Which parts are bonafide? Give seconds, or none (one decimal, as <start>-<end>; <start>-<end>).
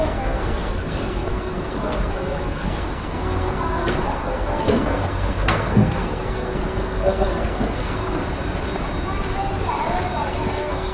8.2-10.3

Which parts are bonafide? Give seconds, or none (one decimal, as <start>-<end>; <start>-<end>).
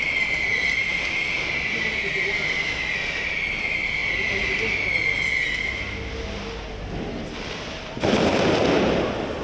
0.0-9.4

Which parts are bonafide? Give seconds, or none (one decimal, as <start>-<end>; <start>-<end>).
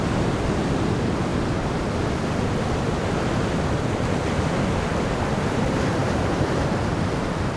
0.0-7.6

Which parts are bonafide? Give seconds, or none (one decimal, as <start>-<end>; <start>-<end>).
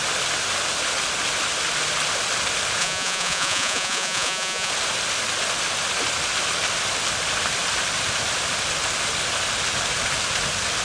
0.0-2.8; 4.7-10.8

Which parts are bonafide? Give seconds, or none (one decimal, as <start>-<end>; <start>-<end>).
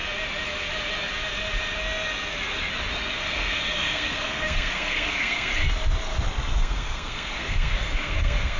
0.0-3.1; 5.5-6.6